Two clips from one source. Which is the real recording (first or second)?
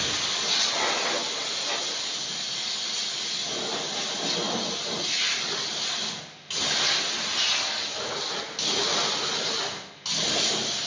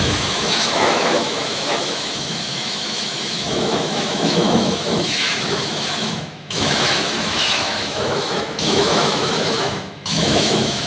first